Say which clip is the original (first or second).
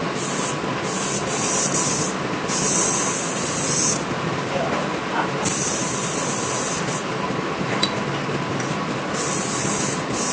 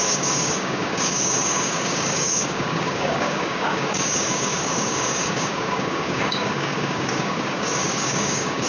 first